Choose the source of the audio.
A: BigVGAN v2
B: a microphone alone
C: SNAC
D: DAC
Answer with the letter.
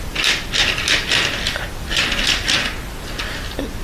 B